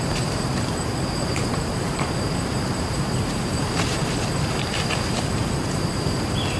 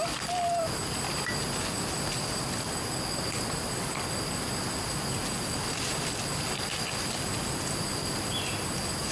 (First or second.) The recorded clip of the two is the second